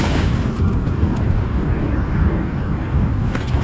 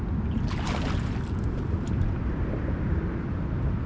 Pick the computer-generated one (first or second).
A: first